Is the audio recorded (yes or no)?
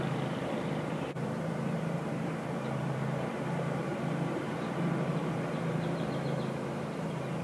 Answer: no